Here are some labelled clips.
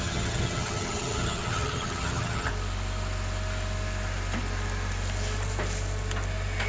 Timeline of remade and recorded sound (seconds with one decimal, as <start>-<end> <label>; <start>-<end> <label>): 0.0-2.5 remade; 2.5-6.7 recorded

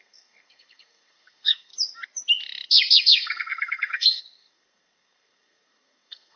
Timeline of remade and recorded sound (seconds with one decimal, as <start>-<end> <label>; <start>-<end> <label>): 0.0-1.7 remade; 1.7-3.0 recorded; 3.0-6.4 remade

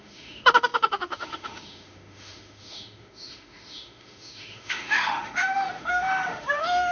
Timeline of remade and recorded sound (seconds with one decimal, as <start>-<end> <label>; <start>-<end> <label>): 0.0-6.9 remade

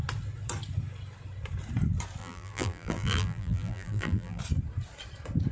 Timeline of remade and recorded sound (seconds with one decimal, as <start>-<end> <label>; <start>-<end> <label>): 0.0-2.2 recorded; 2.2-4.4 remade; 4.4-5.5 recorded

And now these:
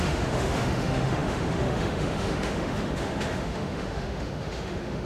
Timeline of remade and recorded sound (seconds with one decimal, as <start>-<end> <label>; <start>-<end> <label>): 0.0-5.1 remade